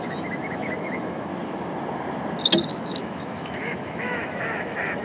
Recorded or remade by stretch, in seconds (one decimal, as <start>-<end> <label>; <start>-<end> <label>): 0.0-1.3 remade; 1.3-2.7 recorded; 2.7-5.0 remade